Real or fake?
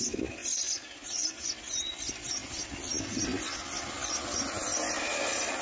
real